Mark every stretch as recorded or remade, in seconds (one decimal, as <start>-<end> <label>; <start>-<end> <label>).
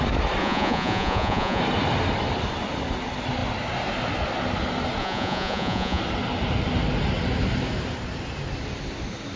0.0-0.4 recorded; 0.4-1.6 remade; 1.6-5.0 recorded; 5.0-6.0 remade; 6.0-9.4 recorded